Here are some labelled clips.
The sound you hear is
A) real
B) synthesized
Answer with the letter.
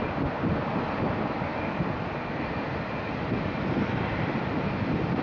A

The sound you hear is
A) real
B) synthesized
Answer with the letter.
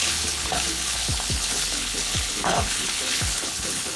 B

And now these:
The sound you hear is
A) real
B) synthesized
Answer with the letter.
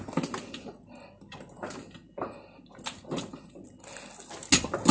A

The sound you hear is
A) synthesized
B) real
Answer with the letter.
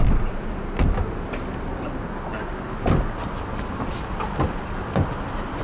B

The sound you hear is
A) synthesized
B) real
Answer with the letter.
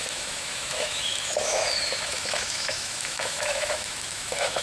A